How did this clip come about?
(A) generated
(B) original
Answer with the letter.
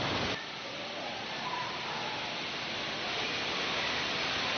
B